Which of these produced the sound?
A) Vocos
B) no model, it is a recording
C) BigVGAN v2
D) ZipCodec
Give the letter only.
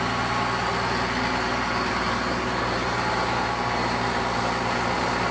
B